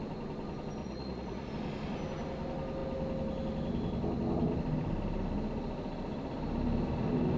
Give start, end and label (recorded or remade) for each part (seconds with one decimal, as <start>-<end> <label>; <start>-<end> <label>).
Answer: 0.0-0.8 recorded; 0.8-1.5 remade; 1.5-7.4 recorded